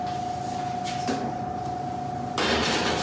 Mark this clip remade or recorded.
recorded